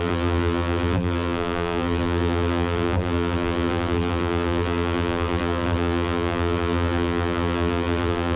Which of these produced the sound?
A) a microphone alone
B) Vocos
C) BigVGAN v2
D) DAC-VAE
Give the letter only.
C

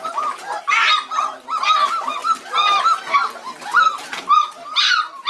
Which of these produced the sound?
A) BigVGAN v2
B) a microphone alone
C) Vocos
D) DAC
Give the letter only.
B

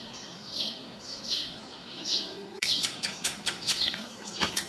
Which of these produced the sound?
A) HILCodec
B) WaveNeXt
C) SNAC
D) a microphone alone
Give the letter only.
C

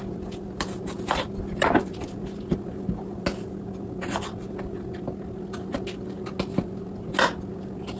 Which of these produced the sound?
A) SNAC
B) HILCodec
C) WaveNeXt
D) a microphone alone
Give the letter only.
D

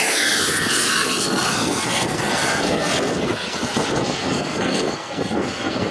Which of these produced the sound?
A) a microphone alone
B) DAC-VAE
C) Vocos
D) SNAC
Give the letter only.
D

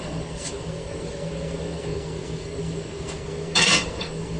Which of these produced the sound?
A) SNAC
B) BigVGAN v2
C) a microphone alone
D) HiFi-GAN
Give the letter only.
A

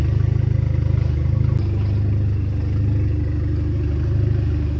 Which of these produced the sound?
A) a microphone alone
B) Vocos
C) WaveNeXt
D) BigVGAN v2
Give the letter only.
A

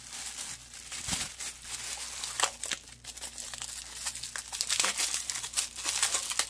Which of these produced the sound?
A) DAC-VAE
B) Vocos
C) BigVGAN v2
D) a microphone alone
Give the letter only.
D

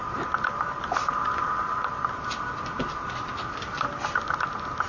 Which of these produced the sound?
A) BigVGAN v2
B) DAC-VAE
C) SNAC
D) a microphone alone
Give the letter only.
D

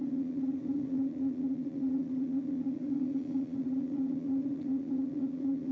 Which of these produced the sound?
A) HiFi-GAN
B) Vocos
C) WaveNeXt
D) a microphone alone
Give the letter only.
B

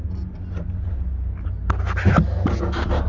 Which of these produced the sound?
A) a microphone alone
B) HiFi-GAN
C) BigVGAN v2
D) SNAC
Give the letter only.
A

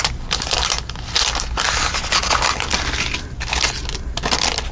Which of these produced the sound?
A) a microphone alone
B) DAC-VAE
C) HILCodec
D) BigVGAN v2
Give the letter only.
A